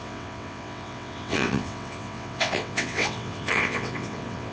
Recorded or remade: remade